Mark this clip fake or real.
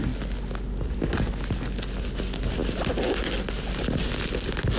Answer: real